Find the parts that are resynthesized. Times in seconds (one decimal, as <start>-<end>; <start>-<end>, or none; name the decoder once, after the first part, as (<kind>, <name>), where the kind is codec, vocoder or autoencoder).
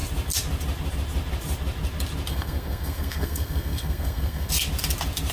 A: 2.3-4.5 (codec, SNAC)